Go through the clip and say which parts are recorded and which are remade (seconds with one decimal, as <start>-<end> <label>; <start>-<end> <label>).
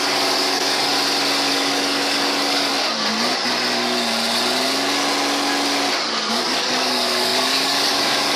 0.0-0.9 remade; 0.9-1.5 recorded; 1.5-2.7 remade; 2.7-6.3 recorded; 6.3-8.4 remade